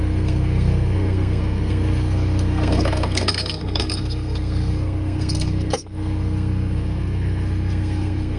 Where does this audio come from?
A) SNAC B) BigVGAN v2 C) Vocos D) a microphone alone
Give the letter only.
A